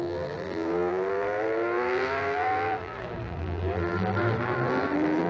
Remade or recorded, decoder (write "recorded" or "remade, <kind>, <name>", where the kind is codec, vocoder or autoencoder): remade, vocoder, BigVGAN v2